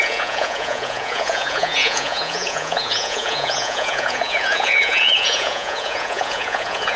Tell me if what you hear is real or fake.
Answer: fake